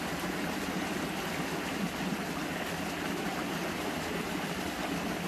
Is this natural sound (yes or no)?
yes